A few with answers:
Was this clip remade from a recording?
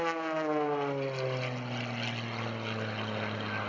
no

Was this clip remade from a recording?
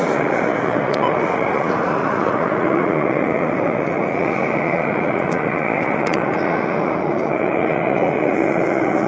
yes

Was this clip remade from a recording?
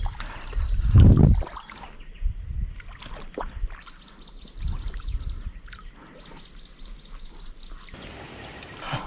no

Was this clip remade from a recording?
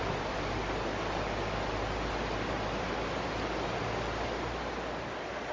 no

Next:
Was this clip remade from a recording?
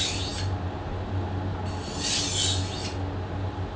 no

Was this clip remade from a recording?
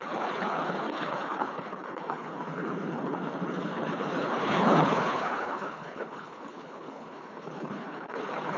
yes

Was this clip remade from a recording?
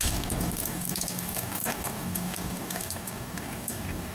yes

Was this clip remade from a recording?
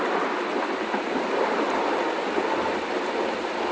no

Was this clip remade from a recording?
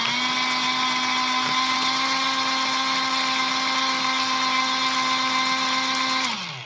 no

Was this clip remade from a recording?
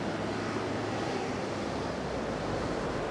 no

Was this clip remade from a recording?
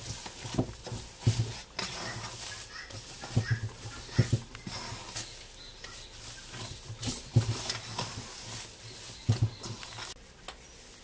no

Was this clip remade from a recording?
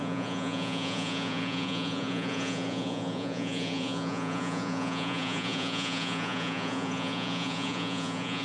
yes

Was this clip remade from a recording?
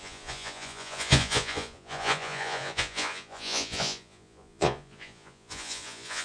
yes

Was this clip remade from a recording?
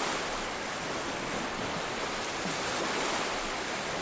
no